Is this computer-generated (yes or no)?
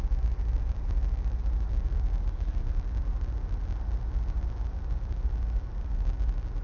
no